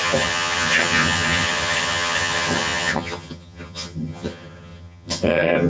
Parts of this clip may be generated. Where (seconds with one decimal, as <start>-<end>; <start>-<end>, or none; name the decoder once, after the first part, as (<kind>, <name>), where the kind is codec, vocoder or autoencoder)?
0.0-5.7 (vocoder, HiFi-GAN)